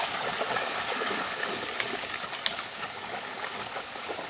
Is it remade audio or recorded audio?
remade